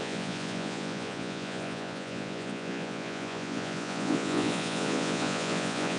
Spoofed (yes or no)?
yes